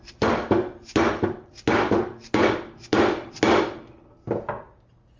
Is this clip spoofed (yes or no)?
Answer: no